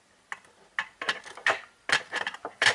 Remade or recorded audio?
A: recorded